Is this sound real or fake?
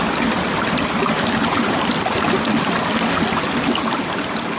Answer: real